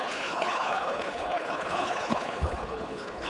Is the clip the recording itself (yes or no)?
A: no